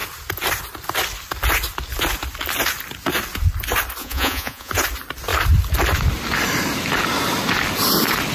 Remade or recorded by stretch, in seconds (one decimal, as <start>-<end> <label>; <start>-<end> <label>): 0.0-4.0 recorded; 4.0-4.7 remade; 4.7-8.3 recorded

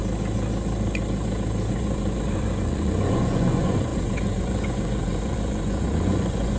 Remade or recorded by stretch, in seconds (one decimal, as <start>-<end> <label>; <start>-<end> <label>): 0.0-1.7 recorded; 1.7-6.6 remade

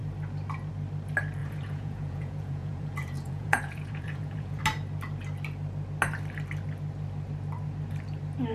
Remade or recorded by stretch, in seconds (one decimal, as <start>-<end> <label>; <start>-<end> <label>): 0.0-1.4 recorded; 1.4-4.6 remade; 4.6-8.5 recorded

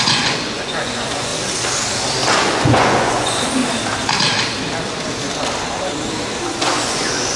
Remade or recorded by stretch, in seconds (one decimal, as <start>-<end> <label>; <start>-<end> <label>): 0.0-1.3 remade; 1.3-2.3 recorded; 2.3-3.6 remade; 3.6-6.6 recorded; 6.6-7.4 remade

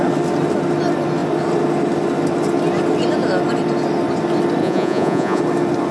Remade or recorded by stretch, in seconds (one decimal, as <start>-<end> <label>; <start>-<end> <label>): 0.0-4.6 recorded; 4.6-5.4 remade; 5.4-5.9 recorded